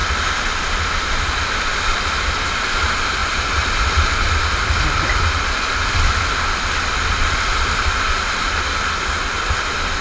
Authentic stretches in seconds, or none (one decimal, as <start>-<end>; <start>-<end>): 0.0-3.2; 7.8-10.0